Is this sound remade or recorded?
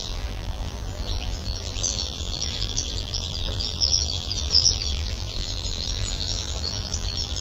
remade